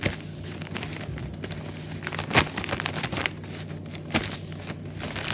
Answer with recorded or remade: recorded